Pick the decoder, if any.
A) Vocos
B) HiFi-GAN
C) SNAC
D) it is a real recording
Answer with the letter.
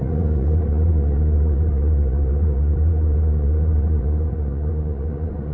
A